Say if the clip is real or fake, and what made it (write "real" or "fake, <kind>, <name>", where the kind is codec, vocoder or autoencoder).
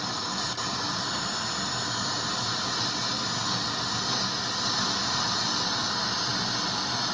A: real